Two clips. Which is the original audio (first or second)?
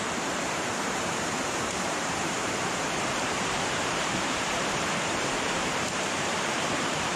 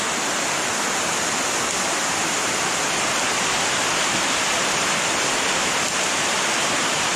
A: second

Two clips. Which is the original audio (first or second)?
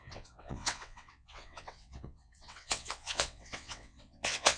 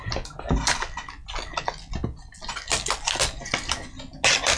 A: second